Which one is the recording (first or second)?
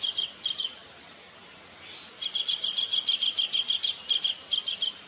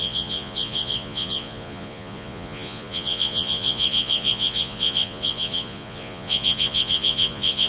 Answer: first